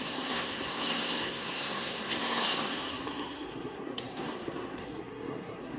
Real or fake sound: fake